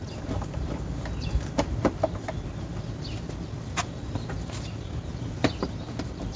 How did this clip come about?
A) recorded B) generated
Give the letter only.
A